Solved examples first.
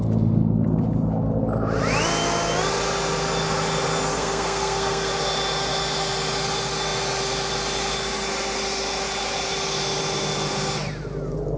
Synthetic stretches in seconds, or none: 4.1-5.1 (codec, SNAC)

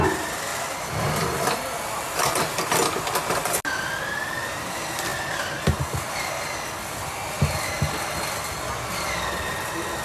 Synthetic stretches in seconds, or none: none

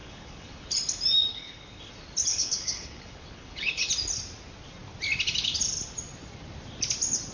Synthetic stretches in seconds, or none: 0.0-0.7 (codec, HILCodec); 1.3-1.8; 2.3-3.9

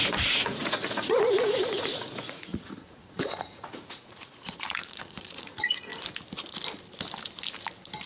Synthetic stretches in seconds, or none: 0.0-5.9 (vocoder, Vocos)

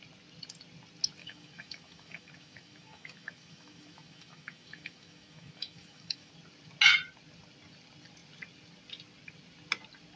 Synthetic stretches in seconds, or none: 1.2-6.3 (autoencoder, DAC-VAE)